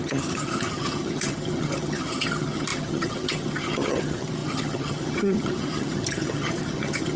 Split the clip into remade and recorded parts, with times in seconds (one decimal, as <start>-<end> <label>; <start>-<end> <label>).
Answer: 0.0-7.2 remade